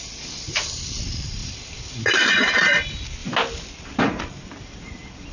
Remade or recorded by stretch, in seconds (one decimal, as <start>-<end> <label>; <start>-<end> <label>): 0.0-3.2 remade; 3.2-4.0 recorded; 4.0-5.3 remade